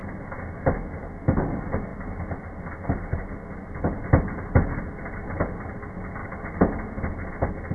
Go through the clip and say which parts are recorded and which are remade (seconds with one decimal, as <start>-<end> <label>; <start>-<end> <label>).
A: 0.0-7.7 recorded